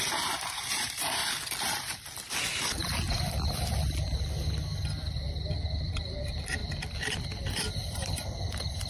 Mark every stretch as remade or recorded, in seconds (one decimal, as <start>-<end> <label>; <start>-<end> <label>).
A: 0.0-1.2 remade; 1.2-5.9 recorded; 5.9-6.6 remade; 6.6-7.7 recorded; 7.7-8.9 remade

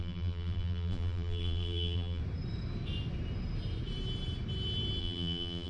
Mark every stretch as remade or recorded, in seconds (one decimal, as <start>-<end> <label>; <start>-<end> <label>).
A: 0.0-2.2 remade; 2.2-5.0 recorded; 5.0-5.7 remade